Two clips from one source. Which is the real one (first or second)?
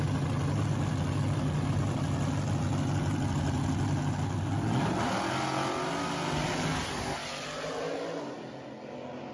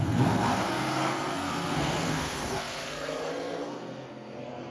first